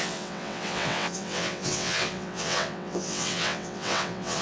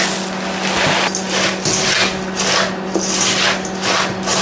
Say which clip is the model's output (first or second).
first